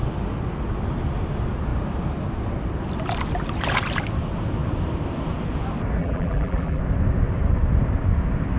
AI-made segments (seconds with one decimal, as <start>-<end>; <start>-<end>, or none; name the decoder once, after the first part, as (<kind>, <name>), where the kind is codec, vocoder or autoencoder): 6.0-6.8 (vocoder, BigVGAN v2)